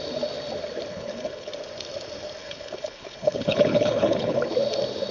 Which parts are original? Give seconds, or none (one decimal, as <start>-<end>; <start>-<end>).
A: 0.0-0.9; 1.5-2.4; 4.4-5.1